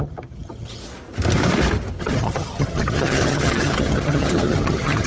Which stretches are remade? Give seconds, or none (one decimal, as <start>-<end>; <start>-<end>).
0.0-0.8; 2.0-5.1